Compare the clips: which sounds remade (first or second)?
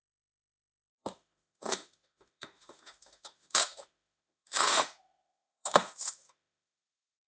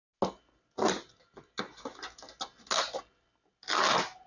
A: first